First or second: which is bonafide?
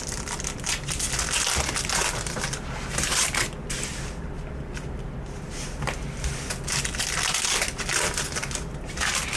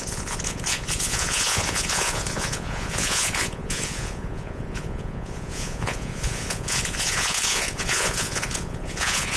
first